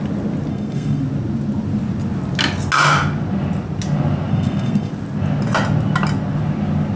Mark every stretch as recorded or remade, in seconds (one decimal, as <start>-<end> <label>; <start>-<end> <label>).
0.0-0.5 recorded; 0.5-1.0 remade; 1.0-4.3 recorded; 4.3-4.9 remade; 4.9-7.0 recorded